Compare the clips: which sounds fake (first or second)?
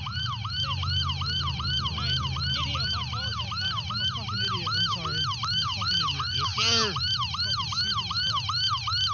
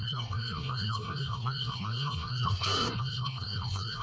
second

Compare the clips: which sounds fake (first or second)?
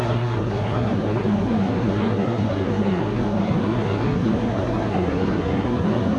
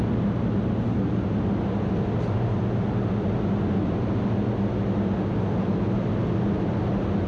first